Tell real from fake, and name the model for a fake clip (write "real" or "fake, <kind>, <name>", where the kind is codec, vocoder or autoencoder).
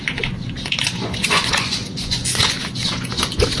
fake, vocoder, Vocos